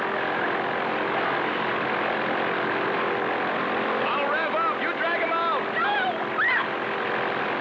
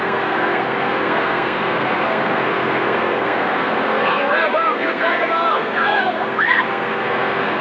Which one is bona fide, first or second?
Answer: first